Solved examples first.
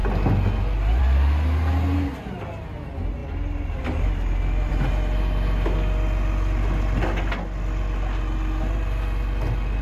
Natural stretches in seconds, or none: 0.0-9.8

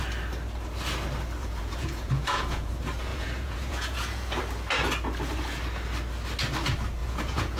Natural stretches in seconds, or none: 0.0-1.4; 2.7-3.1; 4.4-7.0

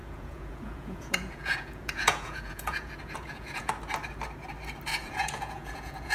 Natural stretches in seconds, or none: 3.7-4.9

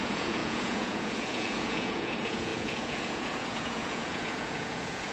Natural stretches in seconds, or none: none